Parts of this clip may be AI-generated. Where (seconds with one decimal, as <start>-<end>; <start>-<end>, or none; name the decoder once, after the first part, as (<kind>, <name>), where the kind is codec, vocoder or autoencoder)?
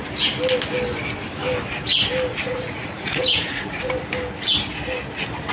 2.3-3.9 (vocoder, Vocos)